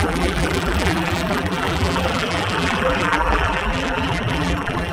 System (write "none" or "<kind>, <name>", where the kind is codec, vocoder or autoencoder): vocoder, BigVGAN v2